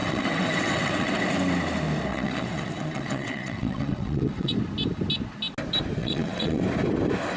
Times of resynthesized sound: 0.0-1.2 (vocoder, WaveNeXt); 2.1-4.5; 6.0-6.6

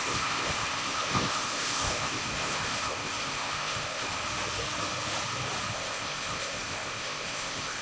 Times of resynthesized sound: 0.0-4.2 (codec, ZipCodec); 5.7-7.8

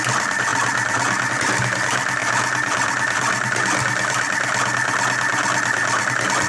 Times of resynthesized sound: none

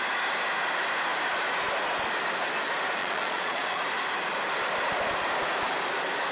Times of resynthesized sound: 3.0-3.8 (vocoder, Vocos)

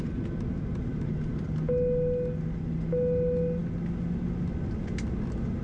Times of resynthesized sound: none